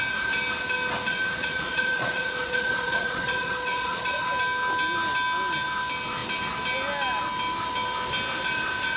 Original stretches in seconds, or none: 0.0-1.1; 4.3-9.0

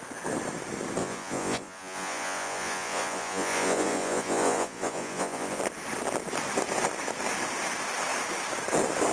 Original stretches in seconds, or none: 0.0-1.0; 5.6-9.1